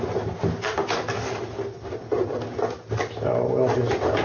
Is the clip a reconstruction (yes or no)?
no